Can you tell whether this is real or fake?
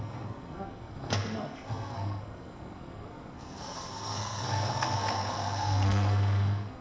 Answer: fake